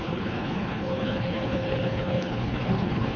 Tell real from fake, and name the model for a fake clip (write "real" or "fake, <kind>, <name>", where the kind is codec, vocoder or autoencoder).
fake, codec, HILCodec